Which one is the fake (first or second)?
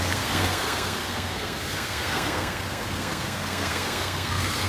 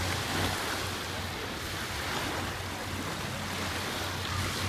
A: first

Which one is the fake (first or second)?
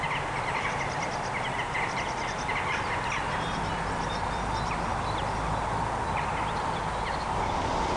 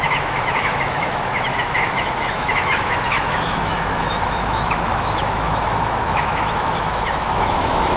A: second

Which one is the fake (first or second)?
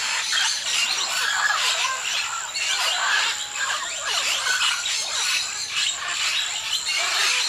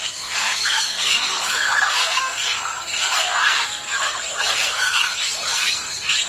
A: second